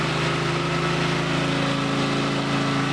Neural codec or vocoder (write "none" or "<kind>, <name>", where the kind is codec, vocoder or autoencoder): none